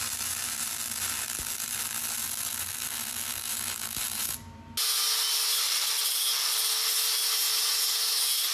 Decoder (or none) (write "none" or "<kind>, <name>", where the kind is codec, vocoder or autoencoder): none